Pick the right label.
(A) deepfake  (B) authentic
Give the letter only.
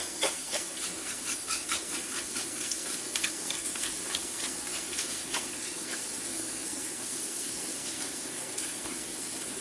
A